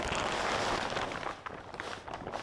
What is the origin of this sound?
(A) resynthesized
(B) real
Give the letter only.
B